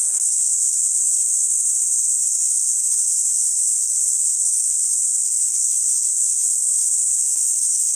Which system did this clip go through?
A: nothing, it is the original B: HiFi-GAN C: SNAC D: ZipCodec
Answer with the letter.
C